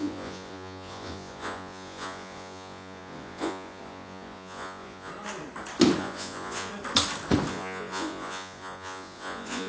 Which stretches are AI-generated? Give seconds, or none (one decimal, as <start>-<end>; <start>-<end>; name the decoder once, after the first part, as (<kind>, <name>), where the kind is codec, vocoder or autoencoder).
0.0-5.1 (vocoder, Vocos); 6.0-6.7; 7.5-9.7